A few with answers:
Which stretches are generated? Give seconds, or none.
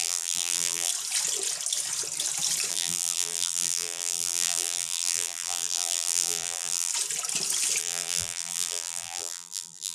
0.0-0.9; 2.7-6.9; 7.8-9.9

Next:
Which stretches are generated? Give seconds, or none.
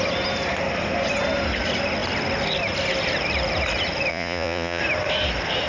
4.1-4.8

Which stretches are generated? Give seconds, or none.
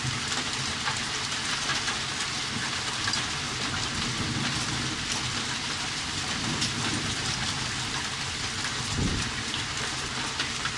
none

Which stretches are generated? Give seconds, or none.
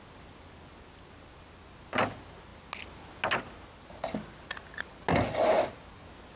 none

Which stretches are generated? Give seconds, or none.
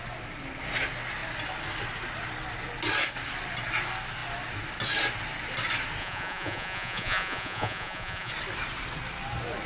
6.0-8.3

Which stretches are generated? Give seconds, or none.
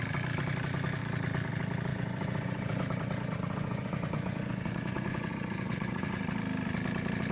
1.9-6.2